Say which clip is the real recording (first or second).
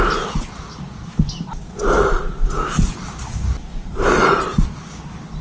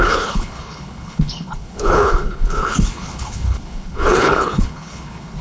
first